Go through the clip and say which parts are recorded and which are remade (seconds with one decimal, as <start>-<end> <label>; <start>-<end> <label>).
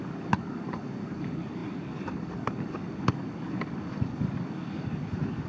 0.0-5.5 remade